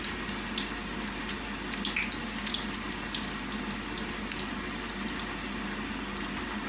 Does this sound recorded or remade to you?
recorded